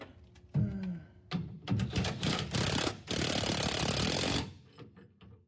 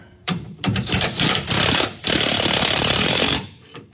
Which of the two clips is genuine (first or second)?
first